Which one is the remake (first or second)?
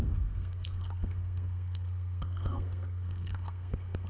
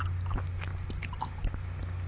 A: first